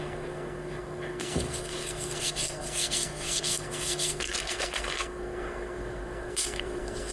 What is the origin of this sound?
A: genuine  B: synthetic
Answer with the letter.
B